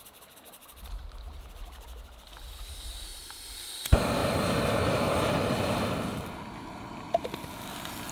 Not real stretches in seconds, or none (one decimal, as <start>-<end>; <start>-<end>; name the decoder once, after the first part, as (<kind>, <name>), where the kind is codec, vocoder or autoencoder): 3.1-3.7 (vocoder, BigVGAN v2)